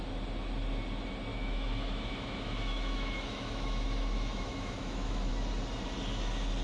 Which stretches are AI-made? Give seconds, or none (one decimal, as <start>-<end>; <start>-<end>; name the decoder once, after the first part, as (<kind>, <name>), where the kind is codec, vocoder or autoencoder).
1.3-5.3 (autoencoder, DAC-VAE)